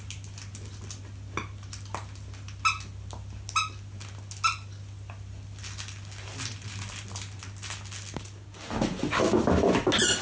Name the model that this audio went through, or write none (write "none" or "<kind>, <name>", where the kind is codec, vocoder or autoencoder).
none